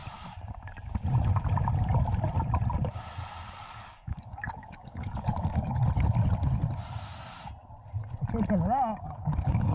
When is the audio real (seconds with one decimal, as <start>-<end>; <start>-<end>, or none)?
0.0-3.5; 5.8-9.0